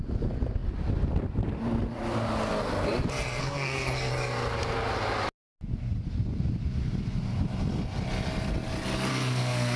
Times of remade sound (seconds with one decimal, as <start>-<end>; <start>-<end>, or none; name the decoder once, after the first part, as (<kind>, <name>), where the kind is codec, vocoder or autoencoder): 3.4-4.1 (codec, SNAC); 9.1-9.8